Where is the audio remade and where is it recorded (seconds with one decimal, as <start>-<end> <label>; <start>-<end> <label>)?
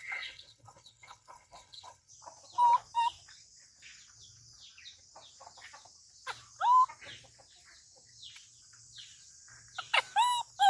0.0-2.1 remade; 2.1-10.7 recorded